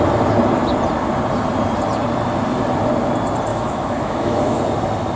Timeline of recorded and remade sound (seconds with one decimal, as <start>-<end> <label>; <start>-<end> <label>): 0.0-3.5 recorded; 3.5-4.6 remade; 4.6-5.2 recorded